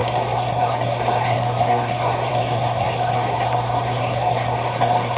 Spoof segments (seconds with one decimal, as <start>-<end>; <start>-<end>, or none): 0.0-5.2